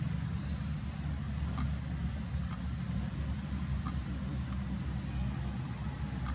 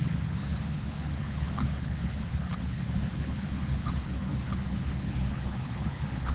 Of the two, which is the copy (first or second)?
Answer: second